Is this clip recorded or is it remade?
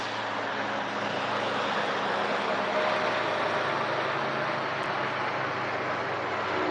recorded